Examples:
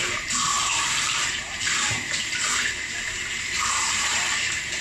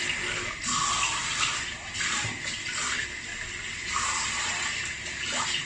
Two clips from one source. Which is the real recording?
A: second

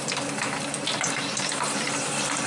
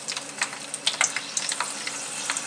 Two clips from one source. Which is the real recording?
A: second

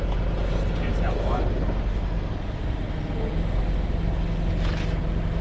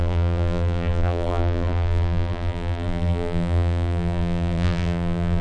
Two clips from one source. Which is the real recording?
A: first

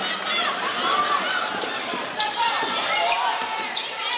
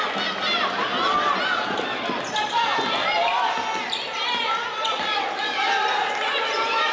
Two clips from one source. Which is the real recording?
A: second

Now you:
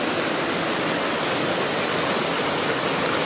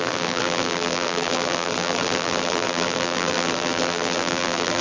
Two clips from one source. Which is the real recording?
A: first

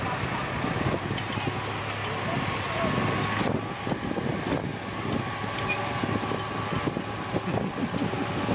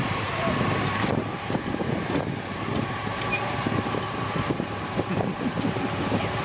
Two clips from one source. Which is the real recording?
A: first